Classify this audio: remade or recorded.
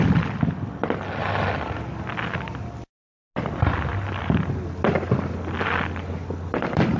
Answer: recorded